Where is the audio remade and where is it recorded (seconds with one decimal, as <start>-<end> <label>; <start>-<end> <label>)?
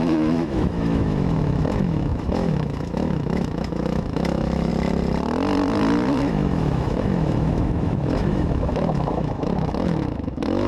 0.0-4.7 remade; 4.7-6.2 recorded; 6.2-10.7 remade